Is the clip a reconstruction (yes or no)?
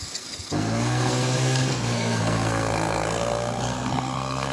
yes